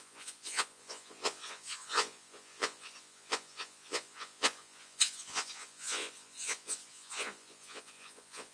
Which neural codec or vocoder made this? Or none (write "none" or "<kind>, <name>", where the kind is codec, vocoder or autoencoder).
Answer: vocoder, Vocos